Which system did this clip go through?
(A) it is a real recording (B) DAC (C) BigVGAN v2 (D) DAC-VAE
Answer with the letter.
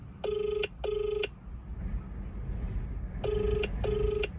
A